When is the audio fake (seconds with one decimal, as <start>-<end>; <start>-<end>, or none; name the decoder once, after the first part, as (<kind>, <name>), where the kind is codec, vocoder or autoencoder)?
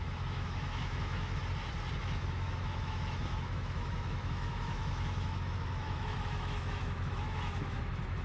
0.0-1.4 (autoencoder, DAC-VAE); 2.0-8.2